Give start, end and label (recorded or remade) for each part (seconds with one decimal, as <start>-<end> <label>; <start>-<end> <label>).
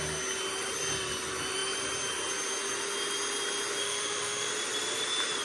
0.0-3.8 recorded; 3.8-4.5 remade; 4.5-5.4 recorded